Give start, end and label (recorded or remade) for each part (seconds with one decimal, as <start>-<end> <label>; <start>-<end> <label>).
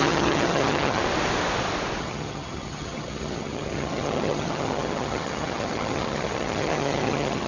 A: 0.0-1.0 remade; 1.0-2.0 recorded; 2.0-7.5 remade